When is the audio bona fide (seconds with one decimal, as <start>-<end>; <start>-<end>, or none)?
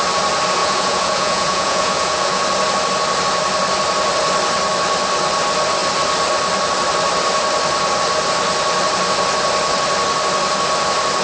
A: 0.0-0.6; 2.4-11.2